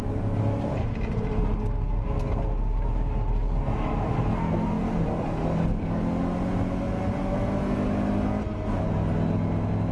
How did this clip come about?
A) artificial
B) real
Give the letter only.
B